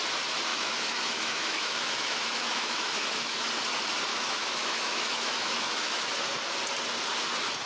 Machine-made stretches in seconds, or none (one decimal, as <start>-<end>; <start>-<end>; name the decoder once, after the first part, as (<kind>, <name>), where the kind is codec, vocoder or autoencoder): 0.5-3.5 (autoencoder, DAC-VAE); 4.1-6.0